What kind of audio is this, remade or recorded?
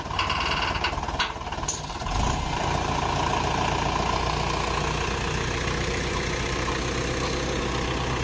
recorded